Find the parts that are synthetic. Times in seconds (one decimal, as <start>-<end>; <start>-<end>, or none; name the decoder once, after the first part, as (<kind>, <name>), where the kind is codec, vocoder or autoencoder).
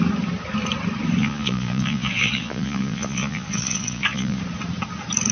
1.2-4.4 (vocoder, Vocos)